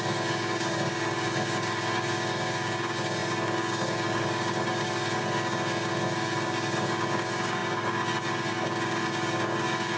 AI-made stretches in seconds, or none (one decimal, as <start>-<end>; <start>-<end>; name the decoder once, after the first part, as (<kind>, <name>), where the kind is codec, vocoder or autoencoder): 0.0-10.0 (codec, DAC)